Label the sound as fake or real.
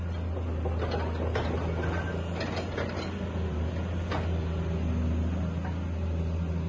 real